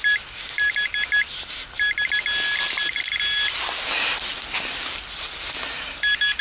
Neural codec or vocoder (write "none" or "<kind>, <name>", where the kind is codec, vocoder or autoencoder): none